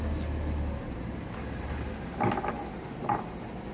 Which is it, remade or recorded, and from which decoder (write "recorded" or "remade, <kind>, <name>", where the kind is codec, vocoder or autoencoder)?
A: recorded